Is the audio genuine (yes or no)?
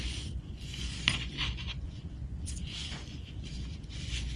no